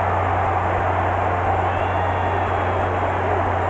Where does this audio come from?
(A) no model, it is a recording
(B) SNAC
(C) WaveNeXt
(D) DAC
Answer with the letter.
A